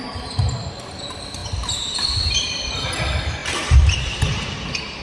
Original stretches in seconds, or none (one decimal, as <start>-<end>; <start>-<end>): 0.0-1.4; 2.7-3.4